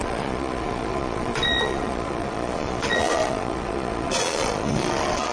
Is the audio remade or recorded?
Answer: remade